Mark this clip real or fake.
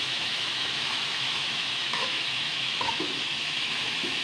fake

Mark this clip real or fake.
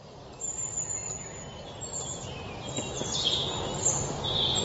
real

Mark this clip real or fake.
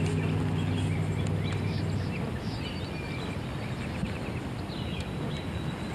real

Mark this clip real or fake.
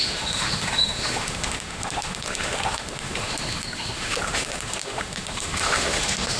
fake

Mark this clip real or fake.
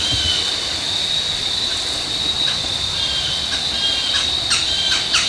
real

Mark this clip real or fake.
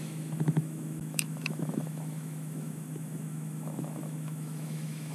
fake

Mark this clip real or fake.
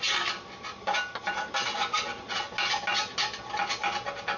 real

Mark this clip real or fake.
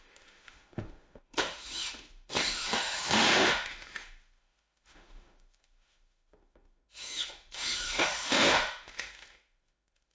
fake